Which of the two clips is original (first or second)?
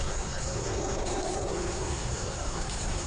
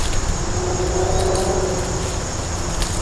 second